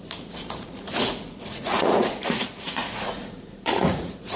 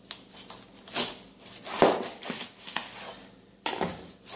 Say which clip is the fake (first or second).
first